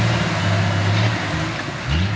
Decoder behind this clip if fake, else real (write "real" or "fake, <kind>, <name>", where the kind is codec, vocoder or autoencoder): real